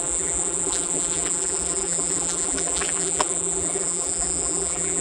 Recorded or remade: remade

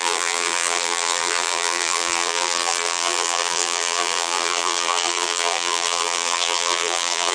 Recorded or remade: remade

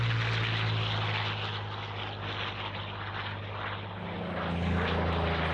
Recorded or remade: recorded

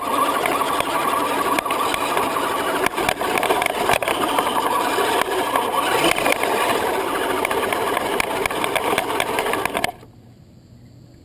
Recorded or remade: recorded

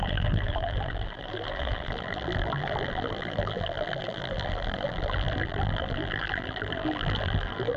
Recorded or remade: remade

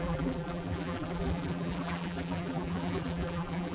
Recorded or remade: remade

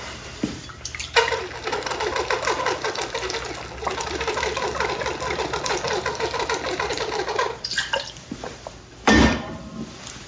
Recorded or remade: remade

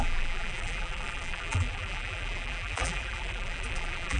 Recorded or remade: remade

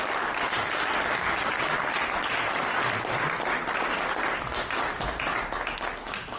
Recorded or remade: recorded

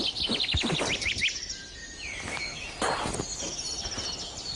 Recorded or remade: recorded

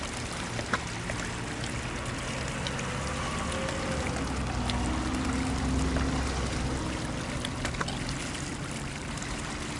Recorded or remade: recorded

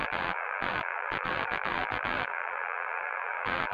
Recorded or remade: remade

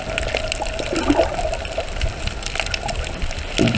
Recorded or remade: recorded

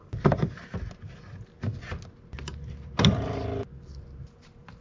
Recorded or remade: recorded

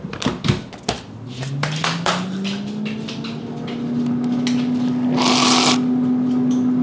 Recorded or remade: recorded